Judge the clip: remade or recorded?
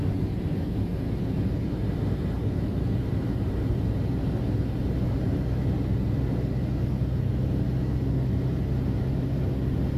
recorded